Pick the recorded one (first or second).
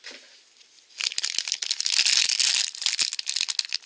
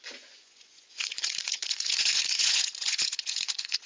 first